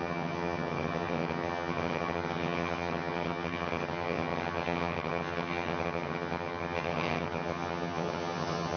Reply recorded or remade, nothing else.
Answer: remade